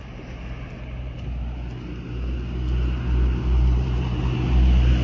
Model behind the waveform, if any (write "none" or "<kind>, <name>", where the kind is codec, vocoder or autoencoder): none